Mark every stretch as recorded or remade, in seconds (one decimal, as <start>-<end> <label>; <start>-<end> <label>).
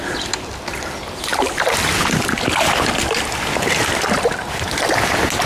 0.0-5.5 recorded